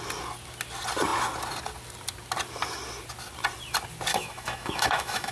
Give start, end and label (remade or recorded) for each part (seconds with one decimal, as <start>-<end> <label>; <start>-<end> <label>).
0.0-4.1 recorded; 4.1-5.3 remade